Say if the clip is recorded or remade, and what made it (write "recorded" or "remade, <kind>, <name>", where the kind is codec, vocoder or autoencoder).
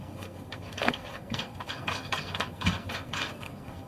remade, codec, SNAC